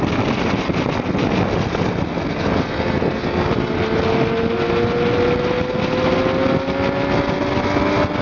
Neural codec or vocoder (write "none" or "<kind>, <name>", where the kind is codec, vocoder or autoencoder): none